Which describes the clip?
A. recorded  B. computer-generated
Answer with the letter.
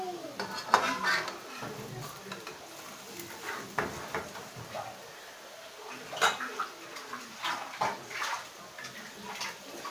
A